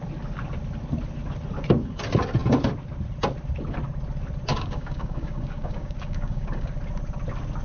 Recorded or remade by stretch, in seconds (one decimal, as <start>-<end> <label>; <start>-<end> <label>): 0.0-4.5 recorded; 4.5-6.7 remade; 6.7-7.6 recorded